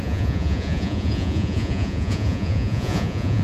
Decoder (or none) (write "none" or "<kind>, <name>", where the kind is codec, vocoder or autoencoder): vocoder, Vocos